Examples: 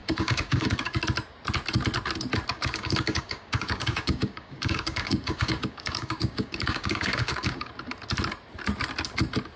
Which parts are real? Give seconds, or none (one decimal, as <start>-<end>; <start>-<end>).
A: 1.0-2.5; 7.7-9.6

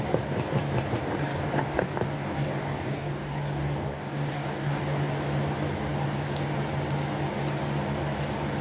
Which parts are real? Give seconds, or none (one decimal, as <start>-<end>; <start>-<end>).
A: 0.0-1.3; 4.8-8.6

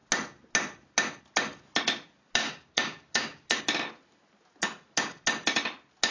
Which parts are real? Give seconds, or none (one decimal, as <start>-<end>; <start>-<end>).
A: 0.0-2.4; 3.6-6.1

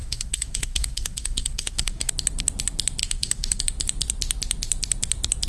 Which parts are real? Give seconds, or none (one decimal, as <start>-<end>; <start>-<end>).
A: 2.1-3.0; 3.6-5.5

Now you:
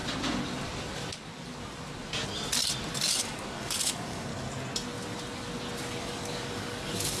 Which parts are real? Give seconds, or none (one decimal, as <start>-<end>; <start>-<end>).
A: 0.0-3.2; 4.3-6.0

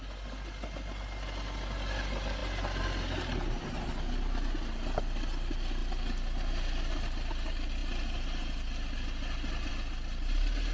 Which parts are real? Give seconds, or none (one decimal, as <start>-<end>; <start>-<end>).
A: 0.0-10.7

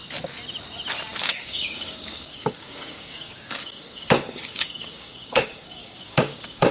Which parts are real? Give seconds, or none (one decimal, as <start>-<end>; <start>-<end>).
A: 0.0-1.2

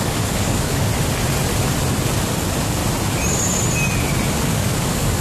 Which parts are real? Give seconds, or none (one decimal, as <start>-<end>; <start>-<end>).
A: 0.9-2.3; 2.8-4.4